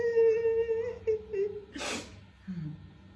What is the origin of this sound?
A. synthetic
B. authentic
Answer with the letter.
B